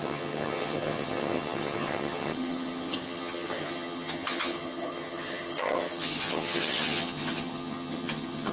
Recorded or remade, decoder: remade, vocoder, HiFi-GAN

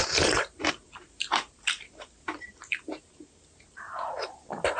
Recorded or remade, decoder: remade, vocoder, BigVGAN v2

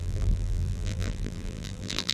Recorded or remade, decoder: remade, vocoder, BigVGAN v2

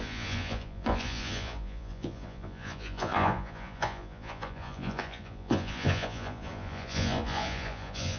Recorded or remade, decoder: remade, vocoder, Vocos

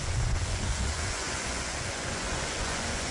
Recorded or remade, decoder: remade, vocoder, Vocos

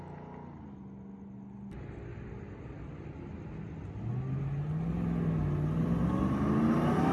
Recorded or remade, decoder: recorded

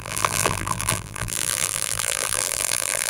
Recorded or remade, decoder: remade, vocoder, BigVGAN v2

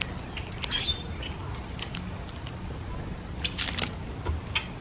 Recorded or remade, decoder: recorded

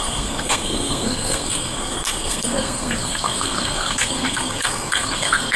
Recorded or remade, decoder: remade, codec, SNAC